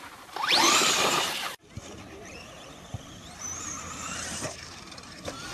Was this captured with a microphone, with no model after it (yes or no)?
no